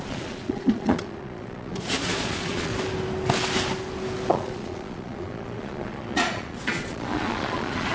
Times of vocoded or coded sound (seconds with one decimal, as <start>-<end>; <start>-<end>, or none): 0.0-2.7; 4.3-7.9